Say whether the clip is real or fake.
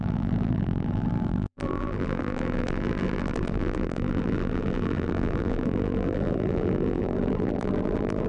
fake